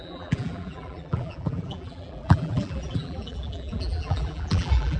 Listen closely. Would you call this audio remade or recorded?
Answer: remade